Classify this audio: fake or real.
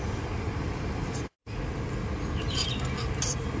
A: real